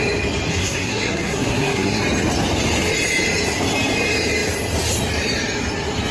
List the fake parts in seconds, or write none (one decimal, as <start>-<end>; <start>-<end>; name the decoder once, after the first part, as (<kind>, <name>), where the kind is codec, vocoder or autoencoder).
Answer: 0.5-2.0 (codec, SNAC)